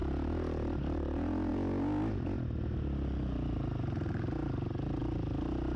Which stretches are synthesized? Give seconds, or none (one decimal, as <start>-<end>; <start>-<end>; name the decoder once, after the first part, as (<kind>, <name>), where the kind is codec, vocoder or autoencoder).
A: none